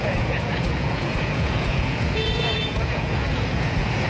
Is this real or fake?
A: fake